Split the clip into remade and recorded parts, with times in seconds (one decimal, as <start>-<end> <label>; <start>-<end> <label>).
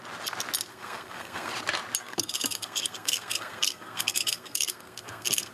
0.0-0.7 recorded; 0.7-1.5 remade; 1.5-2.0 recorded; 2.0-5.5 remade